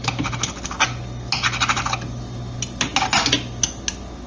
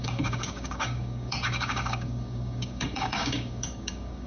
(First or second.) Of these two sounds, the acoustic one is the first